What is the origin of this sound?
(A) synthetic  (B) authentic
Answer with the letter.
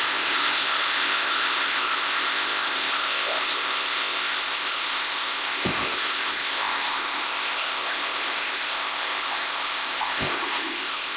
A